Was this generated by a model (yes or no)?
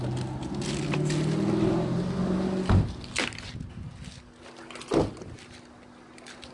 no